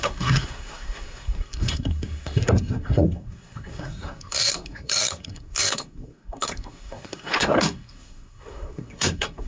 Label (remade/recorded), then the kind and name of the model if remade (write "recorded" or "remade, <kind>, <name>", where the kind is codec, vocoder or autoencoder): remade, codec, SNAC